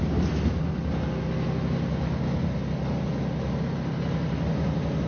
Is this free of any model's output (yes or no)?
yes